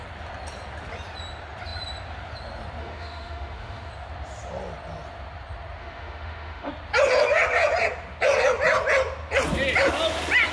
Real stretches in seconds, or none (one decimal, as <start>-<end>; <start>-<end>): 0.0-2.8; 3.9-5.8; 6.7-10.5